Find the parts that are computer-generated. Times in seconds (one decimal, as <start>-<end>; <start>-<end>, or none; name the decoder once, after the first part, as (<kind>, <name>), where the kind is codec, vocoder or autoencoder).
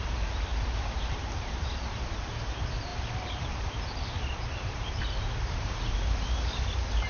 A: 0.0-7.1 (vocoder, BigVGAN v2)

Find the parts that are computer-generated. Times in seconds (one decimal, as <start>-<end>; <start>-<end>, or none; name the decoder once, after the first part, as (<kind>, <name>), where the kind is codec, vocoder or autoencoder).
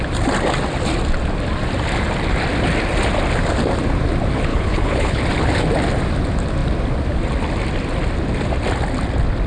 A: 4.5-5.2 (codec, HILCodec)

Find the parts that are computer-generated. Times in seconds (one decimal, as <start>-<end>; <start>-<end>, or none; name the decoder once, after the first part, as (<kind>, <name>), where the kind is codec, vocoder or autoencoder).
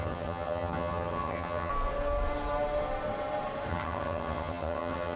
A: 0.0-1.7 (vocoder, HiFi-GAN); 3.7-5.2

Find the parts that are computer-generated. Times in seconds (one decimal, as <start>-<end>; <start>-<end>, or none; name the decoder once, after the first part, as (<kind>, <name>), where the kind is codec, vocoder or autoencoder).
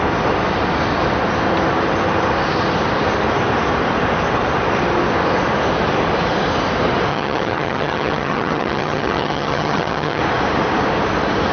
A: 7.1-10.2 (vocoder, HiFi-GAN)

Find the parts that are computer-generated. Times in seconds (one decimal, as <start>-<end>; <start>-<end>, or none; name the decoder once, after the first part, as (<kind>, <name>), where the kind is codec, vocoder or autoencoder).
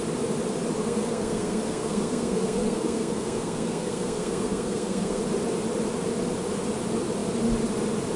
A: 0.8-5.2 (codec, SNAC)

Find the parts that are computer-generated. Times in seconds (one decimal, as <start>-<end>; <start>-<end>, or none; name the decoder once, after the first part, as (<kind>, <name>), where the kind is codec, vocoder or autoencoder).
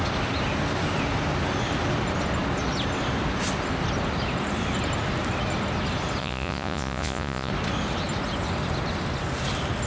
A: 6.2-7.5 (vocoder, Vocos)